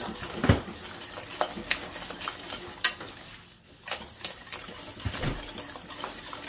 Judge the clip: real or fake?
real